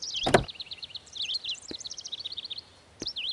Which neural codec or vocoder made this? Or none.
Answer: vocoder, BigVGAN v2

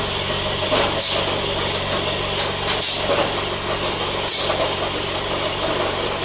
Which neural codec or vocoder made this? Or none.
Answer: none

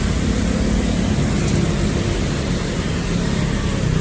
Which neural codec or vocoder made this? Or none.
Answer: none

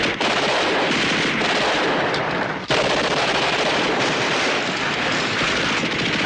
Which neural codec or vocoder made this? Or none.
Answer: vocoder, BigVGAN v2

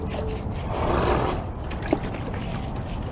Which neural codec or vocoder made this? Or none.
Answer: vocoder, BigVGAN v2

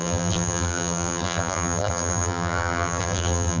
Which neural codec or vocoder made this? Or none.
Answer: vocoder, BigVGAN v2